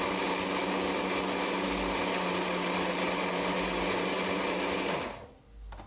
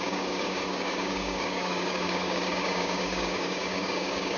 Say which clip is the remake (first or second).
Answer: second